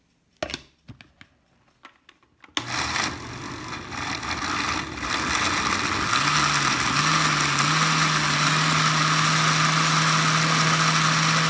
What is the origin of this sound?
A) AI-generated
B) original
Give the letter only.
B